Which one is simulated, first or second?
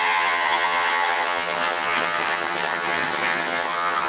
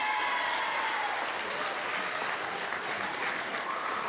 first